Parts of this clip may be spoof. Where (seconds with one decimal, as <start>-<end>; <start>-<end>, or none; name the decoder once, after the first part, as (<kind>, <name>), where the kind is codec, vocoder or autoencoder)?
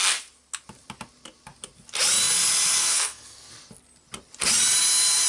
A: 2.8-3.5 (codec, SNAC)